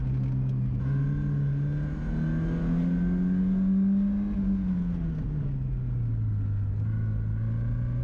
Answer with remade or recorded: recorded